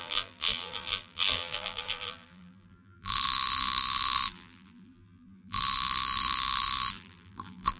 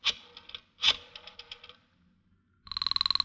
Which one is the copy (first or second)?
first